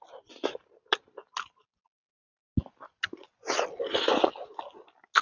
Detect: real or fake real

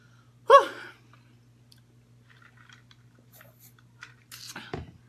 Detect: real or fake real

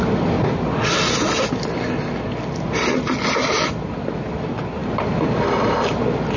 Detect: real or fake real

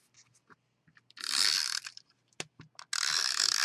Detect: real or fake real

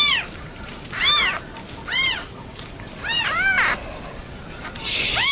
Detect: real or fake fake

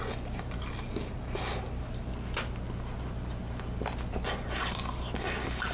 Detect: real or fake real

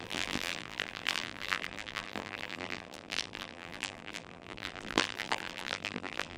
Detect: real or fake fake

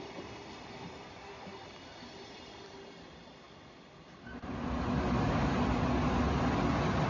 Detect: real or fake real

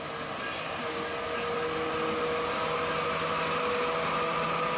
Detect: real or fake real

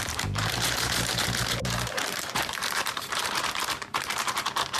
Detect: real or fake fake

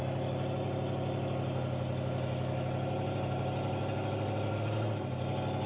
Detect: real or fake real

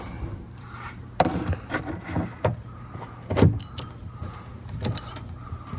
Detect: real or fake fake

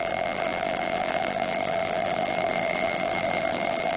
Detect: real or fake fake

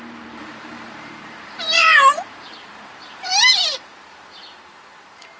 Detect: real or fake fake